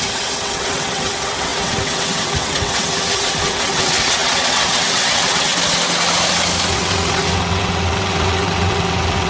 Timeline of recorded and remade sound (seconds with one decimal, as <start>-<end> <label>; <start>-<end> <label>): 0.0-5.5 remade; 5.5-6.7 recorded; 6.7-9.3 remade